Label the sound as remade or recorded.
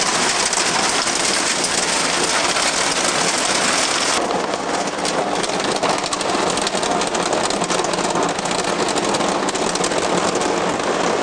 recorded